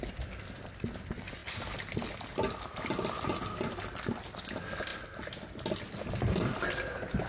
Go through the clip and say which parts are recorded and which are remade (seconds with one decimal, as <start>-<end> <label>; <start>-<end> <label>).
0.0-1.4 recorded; 1.4-1.9 remade; 1.9-7.3 recorded